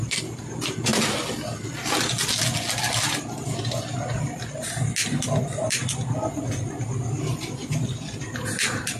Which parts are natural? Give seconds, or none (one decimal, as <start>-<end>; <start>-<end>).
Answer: 0.0-9.0